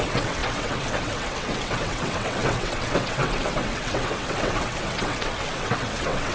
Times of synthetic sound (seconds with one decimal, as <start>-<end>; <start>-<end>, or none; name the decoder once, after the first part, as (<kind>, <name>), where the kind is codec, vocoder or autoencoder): 0.0-6.3 (vocoder, WaveNeXt)